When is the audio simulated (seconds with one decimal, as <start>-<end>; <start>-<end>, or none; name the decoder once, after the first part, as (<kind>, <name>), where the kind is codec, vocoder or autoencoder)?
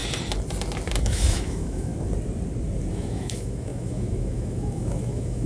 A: 1.0-1.9 (autoencoder, DAC-VAE); 2.9-5.5